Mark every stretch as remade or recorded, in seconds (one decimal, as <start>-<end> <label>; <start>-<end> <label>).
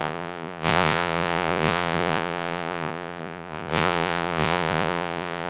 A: 0.0-5.5 remade